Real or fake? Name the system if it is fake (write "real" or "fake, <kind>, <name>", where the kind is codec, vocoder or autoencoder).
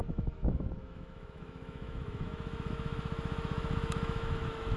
fake, autoencoder, DAC-VAE